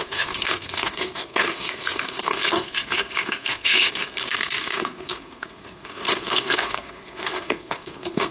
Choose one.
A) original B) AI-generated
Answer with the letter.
B